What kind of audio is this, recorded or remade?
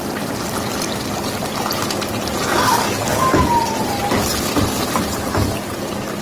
remade